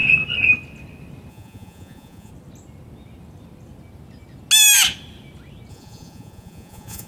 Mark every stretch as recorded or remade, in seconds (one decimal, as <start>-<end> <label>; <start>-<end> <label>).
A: 0.0-1.3 recorded; 1.3-2.3 remade; 2.3-5.7 recorded; 5.7-7.1 remade